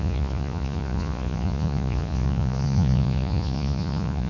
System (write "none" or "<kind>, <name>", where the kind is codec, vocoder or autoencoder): vocoder, Vocos